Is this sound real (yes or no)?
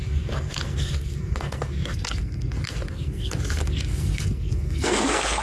no